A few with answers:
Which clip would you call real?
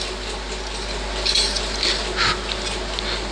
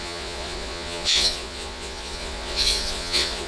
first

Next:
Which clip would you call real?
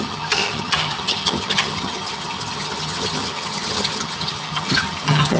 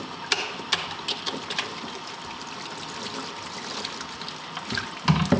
second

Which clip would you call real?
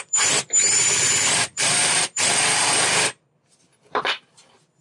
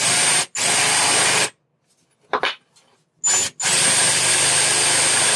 second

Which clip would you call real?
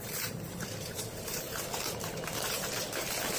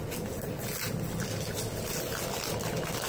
second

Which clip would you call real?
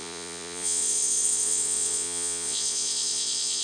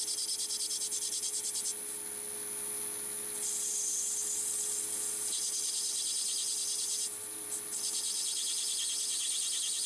second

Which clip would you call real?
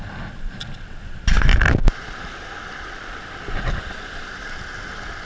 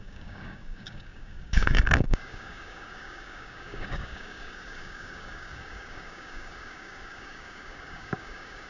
first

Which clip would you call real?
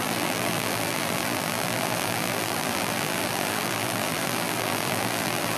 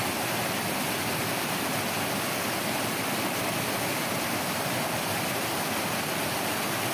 second